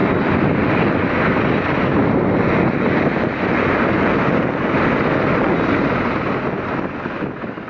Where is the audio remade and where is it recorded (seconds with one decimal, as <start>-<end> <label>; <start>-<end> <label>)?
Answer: 0.0-7.7 recorded